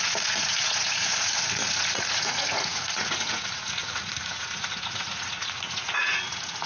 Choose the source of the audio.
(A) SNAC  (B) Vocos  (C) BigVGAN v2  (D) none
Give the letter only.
B